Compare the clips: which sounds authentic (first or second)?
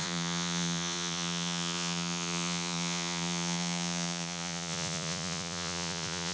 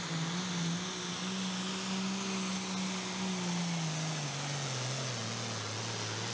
second